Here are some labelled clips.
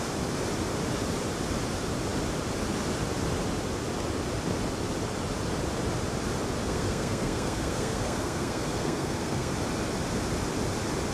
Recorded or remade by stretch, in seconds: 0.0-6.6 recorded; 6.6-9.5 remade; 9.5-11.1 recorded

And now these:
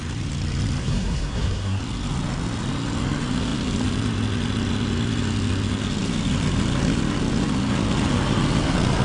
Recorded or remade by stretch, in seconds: 0.0-0.8 recorded; 0.8-1.8 remade; 1.8-9.0 recorded

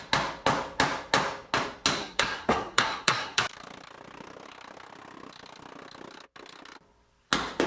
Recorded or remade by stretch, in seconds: 0.0-2.0 recorded; 2.0-3.4 remade; 3.4-7.7 recorded